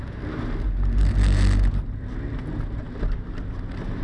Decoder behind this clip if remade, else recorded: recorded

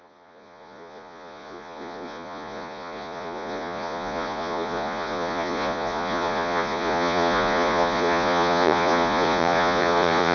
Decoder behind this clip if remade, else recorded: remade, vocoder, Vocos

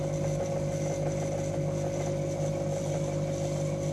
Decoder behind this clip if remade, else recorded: recorded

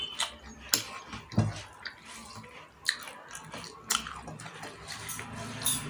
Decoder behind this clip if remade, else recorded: recorded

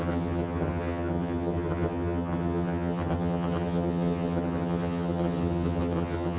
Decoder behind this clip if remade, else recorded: remade, vocoder, HiFi-GAN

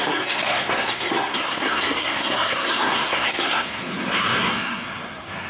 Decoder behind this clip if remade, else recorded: remade, codec, SNAC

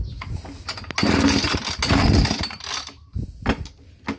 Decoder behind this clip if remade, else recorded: recorded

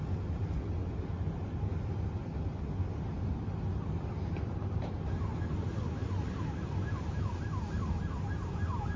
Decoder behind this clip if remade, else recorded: recorded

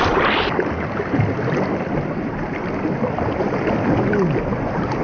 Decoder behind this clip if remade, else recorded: recorded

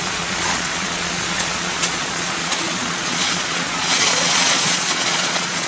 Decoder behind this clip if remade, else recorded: remade, vocoder, Vocos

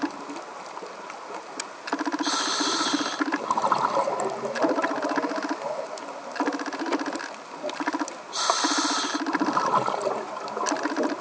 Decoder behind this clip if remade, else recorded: recorded